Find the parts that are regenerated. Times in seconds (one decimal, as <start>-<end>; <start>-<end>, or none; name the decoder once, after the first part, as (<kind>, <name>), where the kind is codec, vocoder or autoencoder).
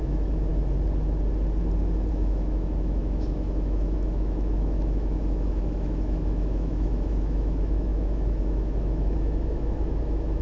0.0-0.5 (autoencoder, DAC-VAE); 2.1-10.4